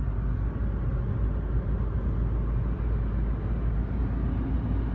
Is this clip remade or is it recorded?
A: recorded